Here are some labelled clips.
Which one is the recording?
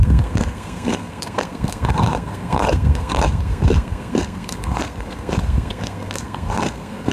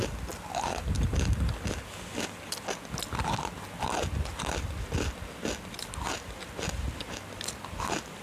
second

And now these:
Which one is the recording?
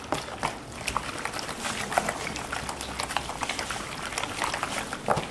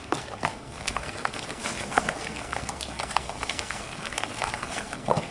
first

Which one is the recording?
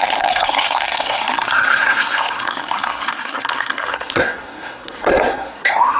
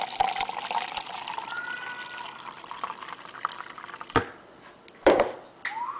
second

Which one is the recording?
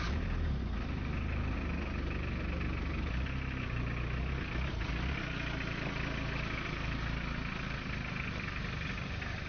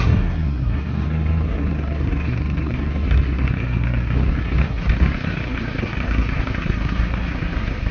first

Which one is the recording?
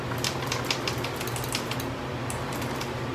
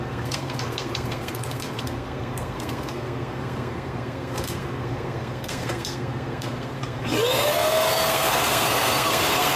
first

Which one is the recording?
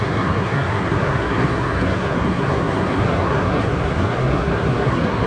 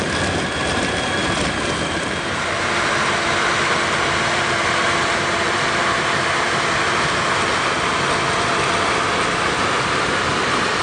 second